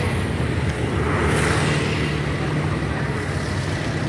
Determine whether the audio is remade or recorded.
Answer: recorded